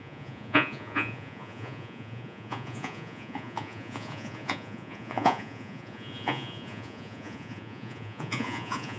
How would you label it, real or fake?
fake